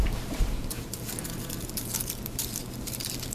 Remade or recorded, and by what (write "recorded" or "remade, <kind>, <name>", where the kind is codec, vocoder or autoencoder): remade, vocoder, BigVGAN v2